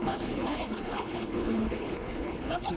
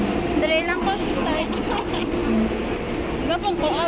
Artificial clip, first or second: first